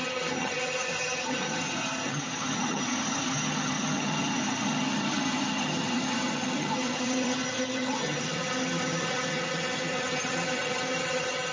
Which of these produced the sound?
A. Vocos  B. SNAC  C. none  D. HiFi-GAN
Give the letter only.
D